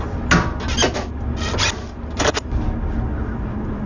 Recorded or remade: recorded